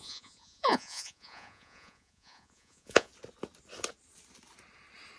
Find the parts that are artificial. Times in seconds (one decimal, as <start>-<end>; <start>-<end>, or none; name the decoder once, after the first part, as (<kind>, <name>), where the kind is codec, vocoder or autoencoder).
0.0-3.1 (vocoder, Vocos)